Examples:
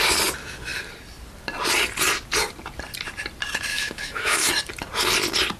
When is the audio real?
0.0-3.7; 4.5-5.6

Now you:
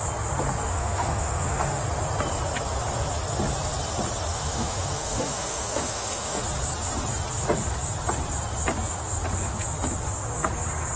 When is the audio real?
0.0-0.7; 1.8-4.3; 6.4-11.0

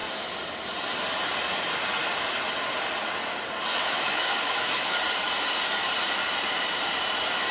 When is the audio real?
0.0-3.8; 5.0-7.5

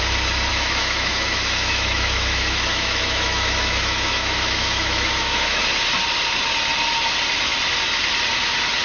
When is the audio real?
0.0-0.5; 5.6-8.8

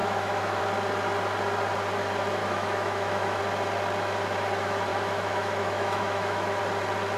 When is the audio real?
0.6-2.4; 3.4-4.9; 6.6-7.2

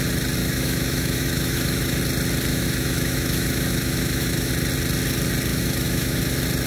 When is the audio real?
0.0-0.4; 2.0-2.5; 4.5-5.5; 6.2-6.7

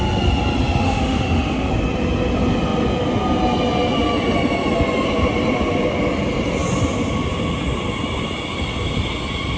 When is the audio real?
0.0-0.8; 1.7-9.6

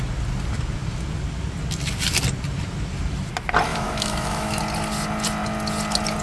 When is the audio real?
0.0-3.7; 4.6-6.2